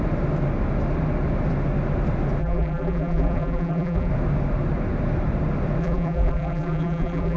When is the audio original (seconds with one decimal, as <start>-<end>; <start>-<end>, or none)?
0.0-2.4; 4.1-5.8

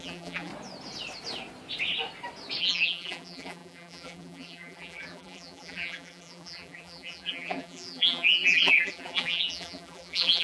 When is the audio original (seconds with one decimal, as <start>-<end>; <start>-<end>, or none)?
0.5-2.6

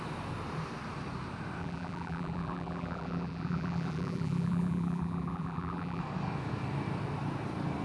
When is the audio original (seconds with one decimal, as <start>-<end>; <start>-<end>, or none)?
0.0-1.6; 6.0-7.8

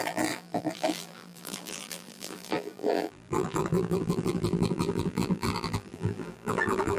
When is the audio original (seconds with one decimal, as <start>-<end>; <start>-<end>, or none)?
none

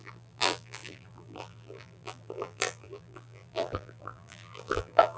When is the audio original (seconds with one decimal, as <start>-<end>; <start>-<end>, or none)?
none

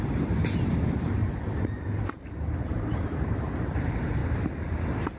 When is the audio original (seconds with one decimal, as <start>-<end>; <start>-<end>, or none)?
1.2-2.0; 4.2-5.2

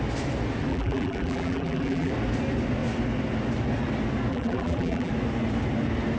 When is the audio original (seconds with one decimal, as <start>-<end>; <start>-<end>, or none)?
0.0-0.7; 2.1-4.3; 5.1-6.2

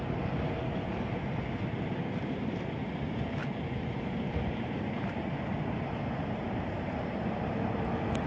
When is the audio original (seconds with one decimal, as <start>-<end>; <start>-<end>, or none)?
0.0-3.4; 7.7-8.3